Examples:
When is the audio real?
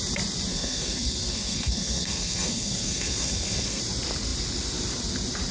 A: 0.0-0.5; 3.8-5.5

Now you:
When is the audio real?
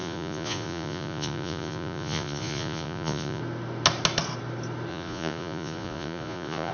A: 3.4-4.9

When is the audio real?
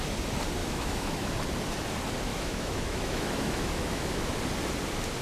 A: 0.0-0.6; 1.3-2.3; 4.2-5.2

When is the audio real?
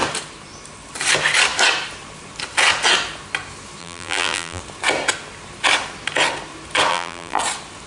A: 0.0-3.8; 4.6-6.9; 7.4-7.9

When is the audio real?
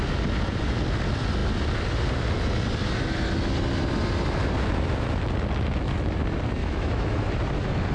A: 0.0-6.6; 7.3-7.9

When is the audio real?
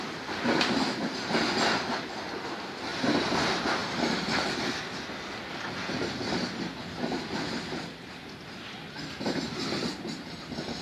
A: 0.0-10.8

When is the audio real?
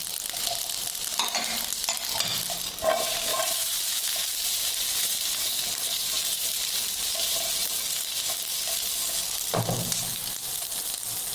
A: 0.0-3.3; 7.7-10.1; 10.8-11.3